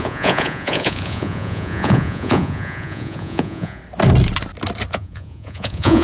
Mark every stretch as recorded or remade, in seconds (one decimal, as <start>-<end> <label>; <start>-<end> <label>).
0.0-3.8 remade; 3.8-4.9 recorded; 4.9-6.0 remade